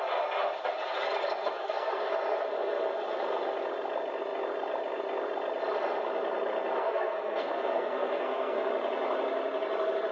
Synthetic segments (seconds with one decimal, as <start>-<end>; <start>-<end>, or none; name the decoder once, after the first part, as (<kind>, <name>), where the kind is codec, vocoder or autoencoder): 1.4-2.1 (codec, SNAC); 6.8-8.7

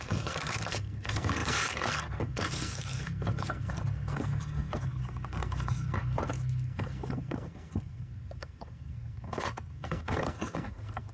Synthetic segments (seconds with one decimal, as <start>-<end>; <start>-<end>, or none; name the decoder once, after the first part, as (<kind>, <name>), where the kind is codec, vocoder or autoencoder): 0.0-11.1 (codec, SNAC)

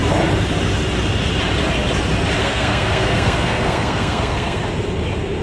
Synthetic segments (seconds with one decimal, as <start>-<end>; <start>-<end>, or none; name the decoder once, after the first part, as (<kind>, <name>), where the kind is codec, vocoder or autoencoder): 2.4-4.6 (codec, SNAC)

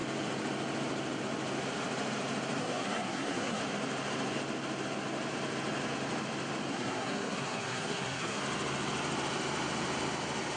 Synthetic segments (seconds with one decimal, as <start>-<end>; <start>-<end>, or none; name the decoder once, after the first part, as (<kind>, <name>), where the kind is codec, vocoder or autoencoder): 2.6-3.6 (codec, SNAC); 6.7-8.4

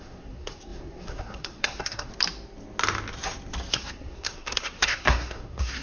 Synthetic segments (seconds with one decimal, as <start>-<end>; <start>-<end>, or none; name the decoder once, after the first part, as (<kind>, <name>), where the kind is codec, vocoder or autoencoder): 0.0-2.1 (codec, SNAC); 3.7-5.8

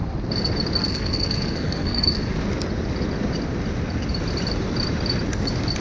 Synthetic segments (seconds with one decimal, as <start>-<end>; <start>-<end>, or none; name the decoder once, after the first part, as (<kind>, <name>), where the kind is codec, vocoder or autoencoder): 0.9-2.3 (codec, SNAC)

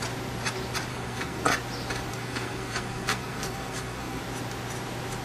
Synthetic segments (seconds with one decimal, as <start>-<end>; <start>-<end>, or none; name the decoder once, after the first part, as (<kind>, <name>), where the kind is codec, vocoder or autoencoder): 0.9-1.4 (codec, SNAC); 2.1-4.2

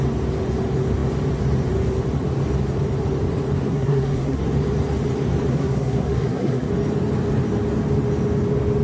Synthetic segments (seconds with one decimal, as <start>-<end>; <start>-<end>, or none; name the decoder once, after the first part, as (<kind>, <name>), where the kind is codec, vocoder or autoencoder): 3.7-4.4 (codec, SNAC); 5.5-6.7